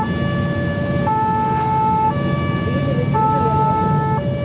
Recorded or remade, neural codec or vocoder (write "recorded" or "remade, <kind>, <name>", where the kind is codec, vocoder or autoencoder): recorded